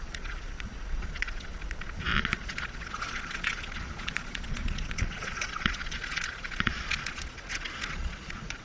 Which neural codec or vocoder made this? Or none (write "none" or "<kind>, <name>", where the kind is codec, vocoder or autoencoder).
vocoder, Vocos